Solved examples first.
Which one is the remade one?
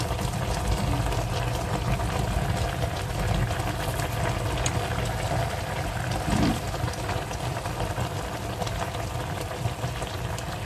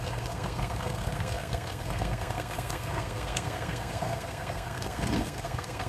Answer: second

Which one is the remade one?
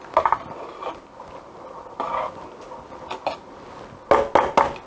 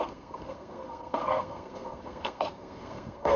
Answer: second